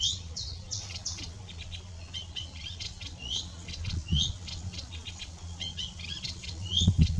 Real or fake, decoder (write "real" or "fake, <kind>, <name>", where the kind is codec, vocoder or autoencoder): fake, vocoder, Vocos